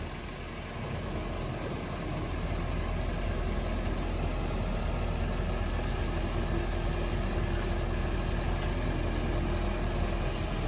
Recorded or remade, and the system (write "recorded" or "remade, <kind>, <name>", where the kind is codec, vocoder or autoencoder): recorded